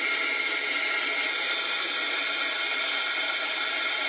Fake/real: real